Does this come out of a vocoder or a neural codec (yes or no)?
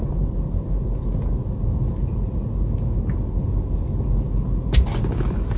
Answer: no